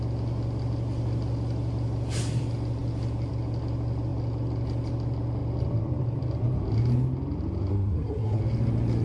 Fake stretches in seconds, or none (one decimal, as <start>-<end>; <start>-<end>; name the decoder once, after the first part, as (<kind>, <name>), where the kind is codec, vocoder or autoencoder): 7.7-8.4 (codec, SNAC)